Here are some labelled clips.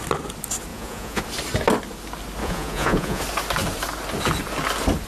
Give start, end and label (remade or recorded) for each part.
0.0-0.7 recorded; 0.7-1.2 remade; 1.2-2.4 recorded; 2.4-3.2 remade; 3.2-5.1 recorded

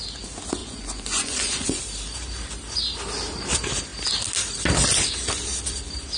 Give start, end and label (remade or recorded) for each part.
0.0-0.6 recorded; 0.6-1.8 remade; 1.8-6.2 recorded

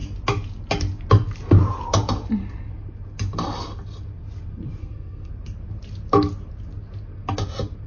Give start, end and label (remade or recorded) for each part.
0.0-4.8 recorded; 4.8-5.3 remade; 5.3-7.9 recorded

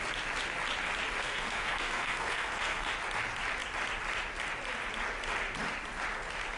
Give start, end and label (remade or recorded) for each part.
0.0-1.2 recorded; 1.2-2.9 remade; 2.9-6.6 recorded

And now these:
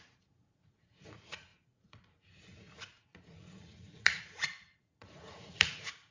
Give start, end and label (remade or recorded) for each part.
0.0-6.1 remade